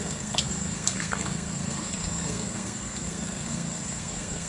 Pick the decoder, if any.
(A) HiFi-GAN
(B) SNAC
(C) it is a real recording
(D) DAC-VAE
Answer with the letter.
B